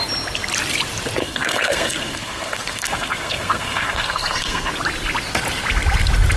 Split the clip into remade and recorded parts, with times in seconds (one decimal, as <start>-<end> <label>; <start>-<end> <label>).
0.0-1.2 recorded; 1.2-4.7 remade; 4.7-6.4 recorded